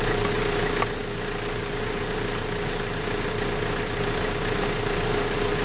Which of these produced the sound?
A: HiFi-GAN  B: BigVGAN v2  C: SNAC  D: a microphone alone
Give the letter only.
D